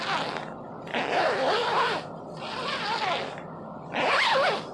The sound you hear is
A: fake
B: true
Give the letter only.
B